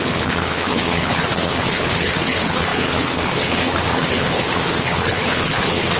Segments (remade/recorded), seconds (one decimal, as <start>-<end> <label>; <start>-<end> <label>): 0.0-6.0 remade